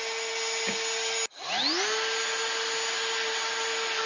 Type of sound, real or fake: real